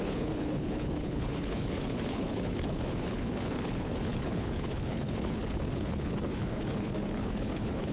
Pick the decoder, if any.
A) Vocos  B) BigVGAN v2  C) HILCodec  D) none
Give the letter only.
C